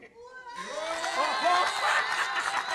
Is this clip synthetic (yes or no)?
no